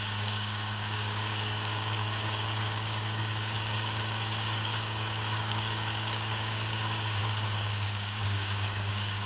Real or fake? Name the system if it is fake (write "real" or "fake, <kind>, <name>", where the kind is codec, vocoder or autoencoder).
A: fake, codec, DAC